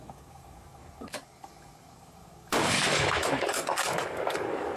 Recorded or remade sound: remade